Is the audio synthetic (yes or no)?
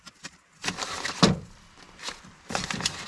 no